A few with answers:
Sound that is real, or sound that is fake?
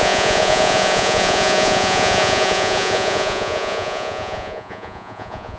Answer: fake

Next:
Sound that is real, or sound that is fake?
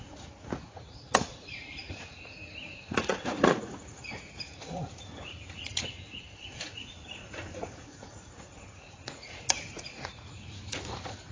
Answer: fake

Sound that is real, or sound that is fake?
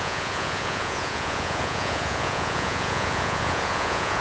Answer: fake